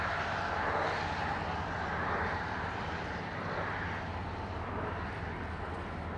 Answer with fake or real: real